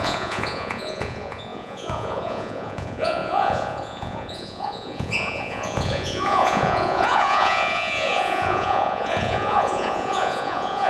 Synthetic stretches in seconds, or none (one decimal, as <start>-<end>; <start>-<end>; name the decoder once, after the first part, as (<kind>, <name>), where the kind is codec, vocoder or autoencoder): 0.0-10.9 (vocoder, Vocos)